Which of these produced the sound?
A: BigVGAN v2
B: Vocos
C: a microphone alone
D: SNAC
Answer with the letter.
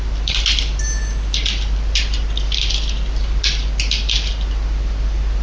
C